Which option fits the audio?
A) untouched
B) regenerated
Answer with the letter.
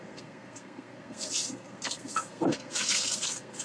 B